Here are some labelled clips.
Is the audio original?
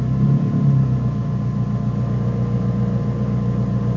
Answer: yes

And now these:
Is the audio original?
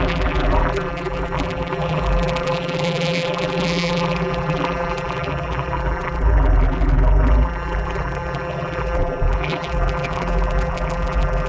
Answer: no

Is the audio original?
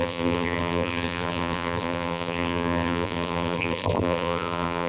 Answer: no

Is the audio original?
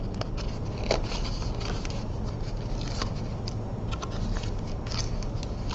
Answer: yes